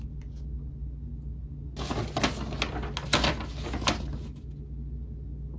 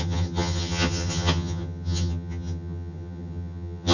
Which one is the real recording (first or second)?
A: first